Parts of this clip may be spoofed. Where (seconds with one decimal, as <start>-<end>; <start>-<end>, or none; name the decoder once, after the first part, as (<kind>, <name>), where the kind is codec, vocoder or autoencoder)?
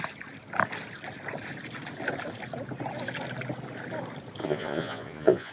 4.4-5.5 (vocoder, Vocos)